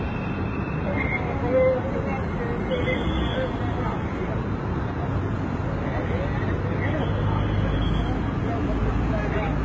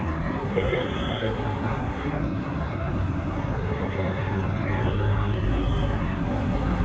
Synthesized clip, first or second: second